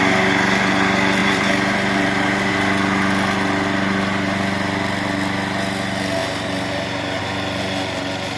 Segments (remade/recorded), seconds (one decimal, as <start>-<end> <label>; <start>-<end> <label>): 0.0-1.2 recorded; 1.2-2.5 remade; 2.5-6.2 recorded; 6.2-7.2 remade; 7.2-8.4 recorded